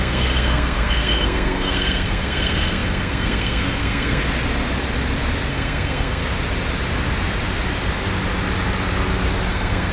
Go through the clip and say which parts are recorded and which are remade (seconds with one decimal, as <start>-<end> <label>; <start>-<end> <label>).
0.0-4.2 remade; 4.2-5.5 recorded; 5.5-6.2 remade; 6.2-9.5 recorded; 9.5-9.9 remade

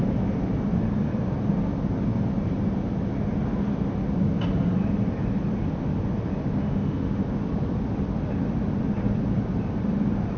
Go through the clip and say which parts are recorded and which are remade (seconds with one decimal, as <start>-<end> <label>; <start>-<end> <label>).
0.0-6.6 recorded; 6.6-7.2 remade; 7.2-10.4 recorded